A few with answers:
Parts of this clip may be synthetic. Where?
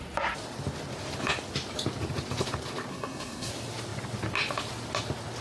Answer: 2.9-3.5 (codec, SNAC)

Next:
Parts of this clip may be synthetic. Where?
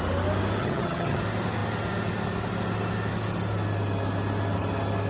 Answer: 0.6-1.2 (vocoder, HiFi-GAN)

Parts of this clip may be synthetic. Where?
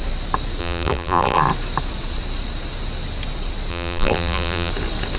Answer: 0.6-1.4 (vocoder, BigVGAN v2); 3.7-4.7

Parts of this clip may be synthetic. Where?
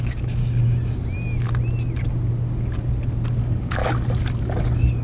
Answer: 0.0-0.4 (codec, DAC); 3.4-3.8; 4.4-5.0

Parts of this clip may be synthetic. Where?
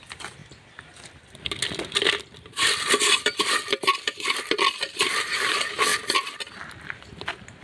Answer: 0.0-0.4 (vocoder, BigVGAN v2); 3.0-5.9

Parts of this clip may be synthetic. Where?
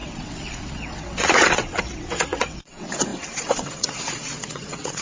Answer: 0.0-5.0 (vocoder, WaveNeXt)